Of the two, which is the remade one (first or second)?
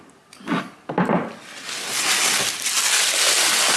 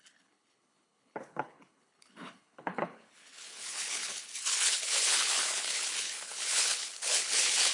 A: second